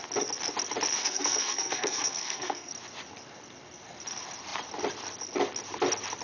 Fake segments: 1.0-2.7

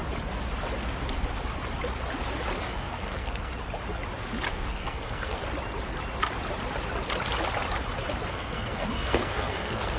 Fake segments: 2.6-3.5; 4.5-5.4; 8.3-10.0

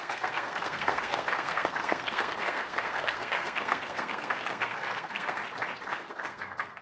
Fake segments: 0.0-5.4; 5.9-6.8

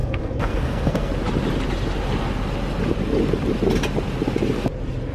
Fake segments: 0.0-1.1

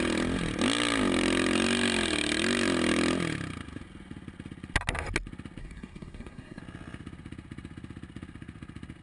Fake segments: 5.6-6.6

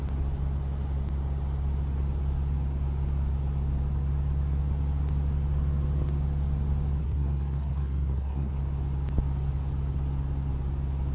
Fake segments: 7.0-8.5

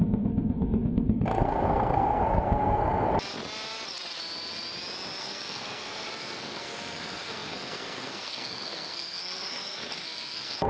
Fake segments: 0.0-3.1; 5.2-10.7

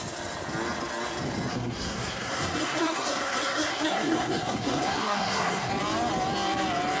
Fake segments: 1.5-5.7